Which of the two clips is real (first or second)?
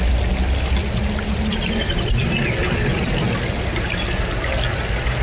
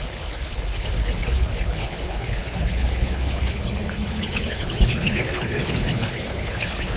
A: first